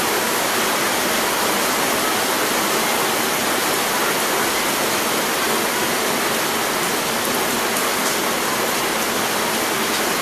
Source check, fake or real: real